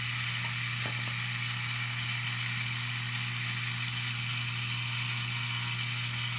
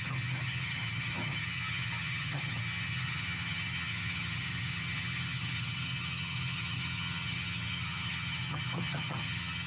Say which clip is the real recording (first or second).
first